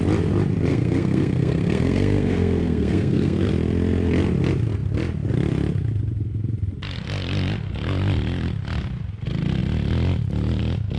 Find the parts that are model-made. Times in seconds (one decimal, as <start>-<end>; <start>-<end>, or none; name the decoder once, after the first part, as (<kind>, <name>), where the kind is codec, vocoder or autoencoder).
0.7-3.5 (codec, SNAC)